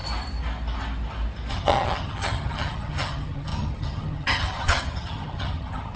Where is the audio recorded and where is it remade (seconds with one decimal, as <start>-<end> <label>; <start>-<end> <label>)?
0.0-1.5 recorded; 1.5-6.0 remade